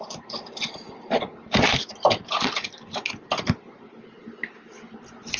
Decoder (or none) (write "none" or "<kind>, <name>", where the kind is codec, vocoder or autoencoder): none